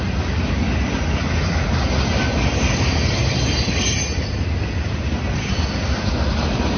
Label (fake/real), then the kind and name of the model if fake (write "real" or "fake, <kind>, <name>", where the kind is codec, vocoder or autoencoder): real